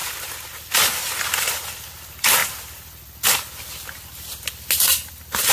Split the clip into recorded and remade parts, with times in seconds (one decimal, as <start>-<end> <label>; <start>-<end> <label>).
0.0-5.5 recorded